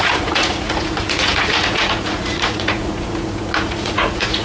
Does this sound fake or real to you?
fake